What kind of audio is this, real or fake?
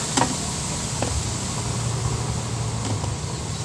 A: real